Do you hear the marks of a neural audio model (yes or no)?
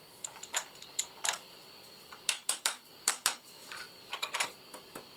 yes